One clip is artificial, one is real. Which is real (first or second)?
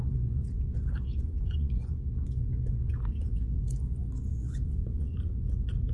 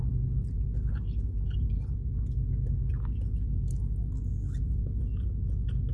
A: second